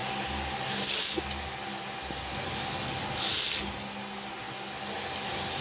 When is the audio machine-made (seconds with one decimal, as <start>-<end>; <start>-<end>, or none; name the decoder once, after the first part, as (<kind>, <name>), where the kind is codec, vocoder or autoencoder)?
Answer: none